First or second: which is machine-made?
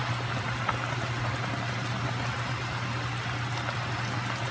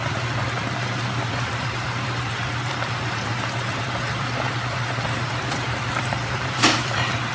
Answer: second